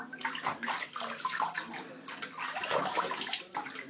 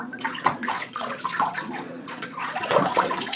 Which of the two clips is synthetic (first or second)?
second